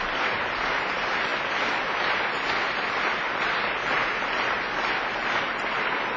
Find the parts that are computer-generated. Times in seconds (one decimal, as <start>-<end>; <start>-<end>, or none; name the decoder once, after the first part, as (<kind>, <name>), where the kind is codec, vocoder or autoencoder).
none